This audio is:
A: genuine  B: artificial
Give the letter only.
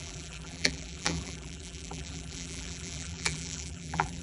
B